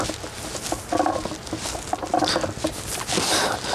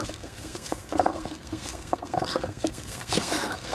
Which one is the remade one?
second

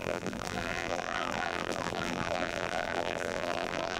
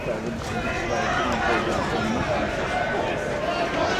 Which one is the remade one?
first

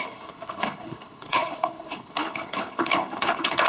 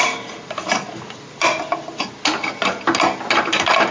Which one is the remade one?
first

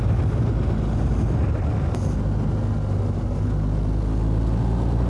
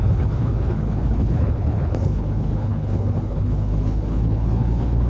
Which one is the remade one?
second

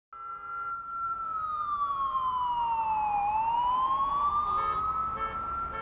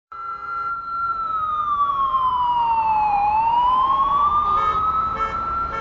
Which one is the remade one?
second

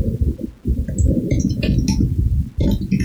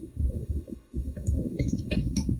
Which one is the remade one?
second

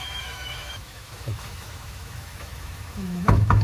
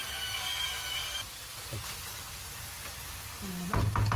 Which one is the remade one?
first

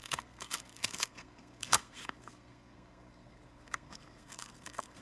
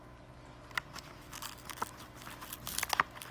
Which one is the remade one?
first